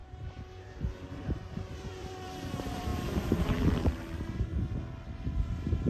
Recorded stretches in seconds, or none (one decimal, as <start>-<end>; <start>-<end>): 4.5-5.5